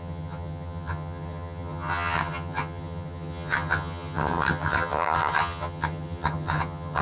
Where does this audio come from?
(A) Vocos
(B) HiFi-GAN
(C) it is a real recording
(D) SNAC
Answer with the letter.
B